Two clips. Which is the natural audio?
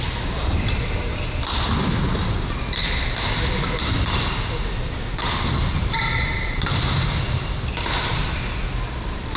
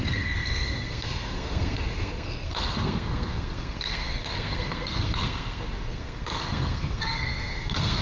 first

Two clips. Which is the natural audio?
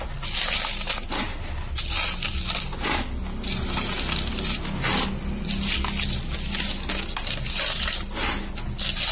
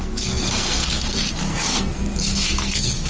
first